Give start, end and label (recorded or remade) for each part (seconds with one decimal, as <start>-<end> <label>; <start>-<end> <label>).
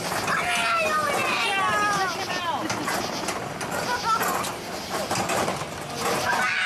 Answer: 0.0-6.7 recorded